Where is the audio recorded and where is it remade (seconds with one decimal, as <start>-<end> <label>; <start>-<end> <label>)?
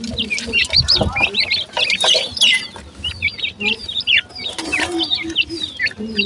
0.0-6.3 recorded